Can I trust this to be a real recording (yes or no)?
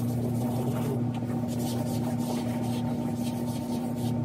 yes